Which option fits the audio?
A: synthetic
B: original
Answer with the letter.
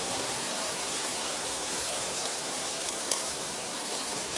A